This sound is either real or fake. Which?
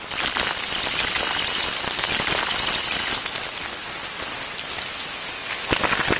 real